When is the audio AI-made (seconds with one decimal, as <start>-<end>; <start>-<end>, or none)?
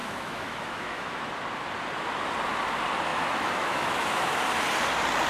0.0-1.3; 3.1-4.4